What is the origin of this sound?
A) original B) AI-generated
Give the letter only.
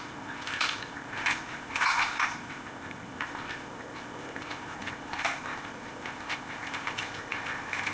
B